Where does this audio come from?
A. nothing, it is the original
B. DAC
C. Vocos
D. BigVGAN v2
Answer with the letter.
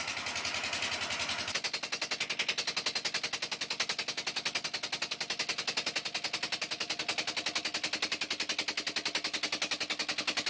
A